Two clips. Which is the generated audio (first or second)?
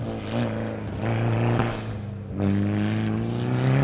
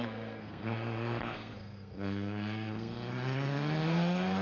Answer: second